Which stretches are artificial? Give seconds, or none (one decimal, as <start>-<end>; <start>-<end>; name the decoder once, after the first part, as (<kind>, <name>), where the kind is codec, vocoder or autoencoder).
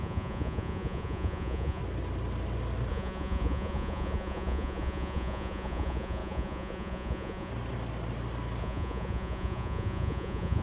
0.0-1.8 (vocoder, Vocos); 2.9-7.5; 8.6-10.6